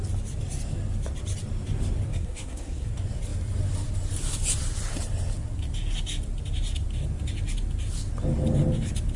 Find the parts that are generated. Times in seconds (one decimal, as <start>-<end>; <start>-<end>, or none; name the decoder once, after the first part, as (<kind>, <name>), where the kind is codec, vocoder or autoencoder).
2.1-2.9 (codec, SNAC)